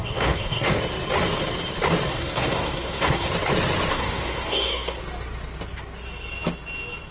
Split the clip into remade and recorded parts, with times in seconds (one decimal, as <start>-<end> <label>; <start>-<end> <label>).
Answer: 0.0-0.7 remade; 0.7-2.1 recorded; 2.1-3.3 remade; 3.3-3.9 recorded; 3.9-5.0 remade; 5.0-7.1 recorded